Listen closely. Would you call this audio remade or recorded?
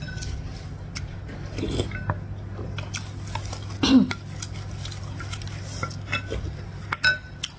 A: recorded